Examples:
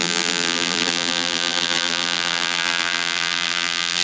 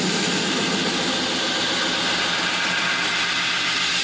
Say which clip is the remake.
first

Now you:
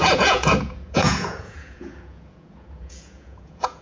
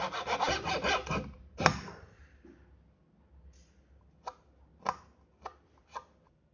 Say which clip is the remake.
first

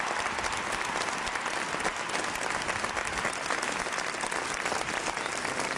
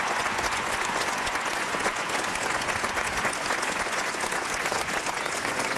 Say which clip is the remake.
second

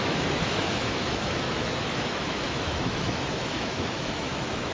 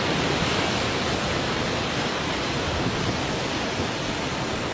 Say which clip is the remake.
first